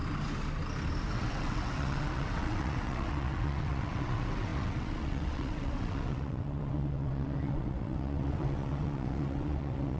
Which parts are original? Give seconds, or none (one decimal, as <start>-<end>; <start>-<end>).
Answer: 0.0-1.1

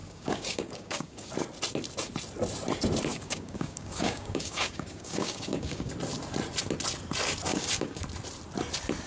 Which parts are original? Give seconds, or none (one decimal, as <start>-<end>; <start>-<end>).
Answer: 1.3-3.1; 5.9-7.5; 8.0-9.1